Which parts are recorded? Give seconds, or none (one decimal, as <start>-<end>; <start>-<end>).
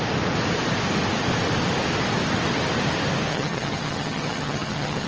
0.0-3.3